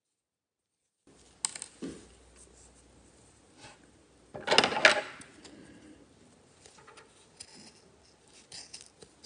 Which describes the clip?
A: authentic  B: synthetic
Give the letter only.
A